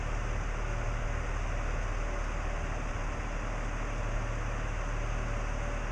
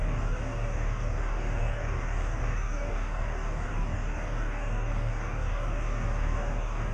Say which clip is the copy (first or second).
second